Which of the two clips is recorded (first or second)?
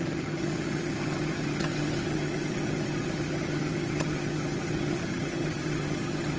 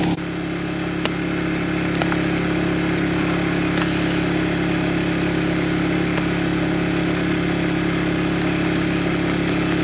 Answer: second